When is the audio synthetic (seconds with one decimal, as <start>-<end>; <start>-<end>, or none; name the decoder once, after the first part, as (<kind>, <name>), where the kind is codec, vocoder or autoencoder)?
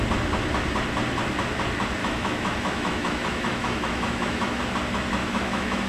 2.0-4.6 (autoencoder, DAC-VAE); 5.2-5.9